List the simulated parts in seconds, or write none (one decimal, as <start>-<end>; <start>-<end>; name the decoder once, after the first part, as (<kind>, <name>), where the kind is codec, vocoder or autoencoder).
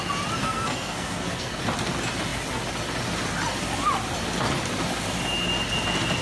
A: 0.4-1.6 (codec, SNAC)